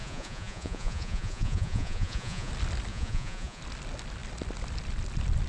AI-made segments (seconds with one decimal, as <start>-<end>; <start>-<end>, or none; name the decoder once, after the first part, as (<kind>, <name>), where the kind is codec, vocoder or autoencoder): 0.0-2.5 (vocoder, Vocos); 2.9-3.6